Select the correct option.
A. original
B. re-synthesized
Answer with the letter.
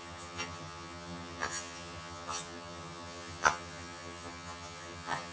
B